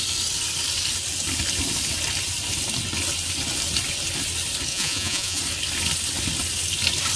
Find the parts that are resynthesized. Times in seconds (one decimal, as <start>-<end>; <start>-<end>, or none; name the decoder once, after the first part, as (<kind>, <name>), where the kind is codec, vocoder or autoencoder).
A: 4.7-5.4 (vocoder, Vocos)